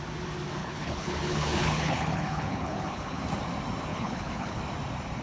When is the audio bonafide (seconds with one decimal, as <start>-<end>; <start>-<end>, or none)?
0.0-0.6; 3.2-3.9; 4.6-5.2